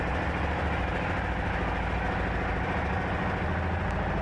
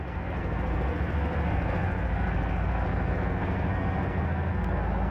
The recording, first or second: first